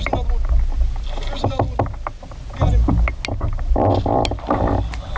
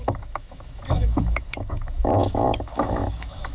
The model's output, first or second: second